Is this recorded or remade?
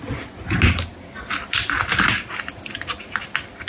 recorded